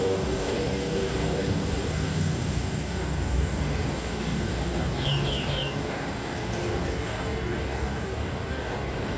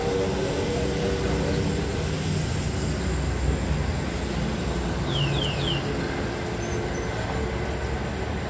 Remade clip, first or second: first